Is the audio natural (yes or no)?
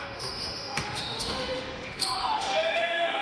no